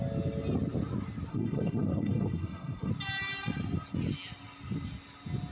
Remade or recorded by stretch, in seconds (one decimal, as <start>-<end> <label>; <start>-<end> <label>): 0.0-1.3 recorded; 1.3-2.9 remade; 2.9-5.5 recorded